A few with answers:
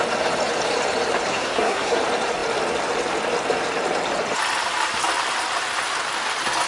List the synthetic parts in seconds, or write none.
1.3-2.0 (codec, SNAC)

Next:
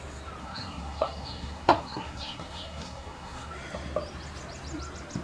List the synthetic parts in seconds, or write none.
0.4-3.5 (codec, SNAC)

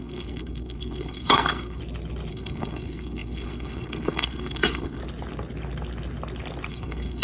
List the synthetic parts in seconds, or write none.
0.0-1.8 (codec, SNAC); 2.3-5.0; 6.7-7.2